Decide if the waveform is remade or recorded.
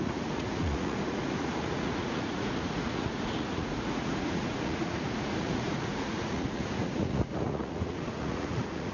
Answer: remade